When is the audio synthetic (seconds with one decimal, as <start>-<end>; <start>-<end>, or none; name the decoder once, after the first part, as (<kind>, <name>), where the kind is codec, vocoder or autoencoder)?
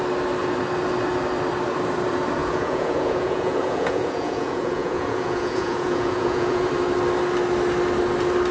2.4-6.7 (vocoder, Vocos)